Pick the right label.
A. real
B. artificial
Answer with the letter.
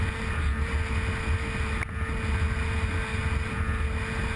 A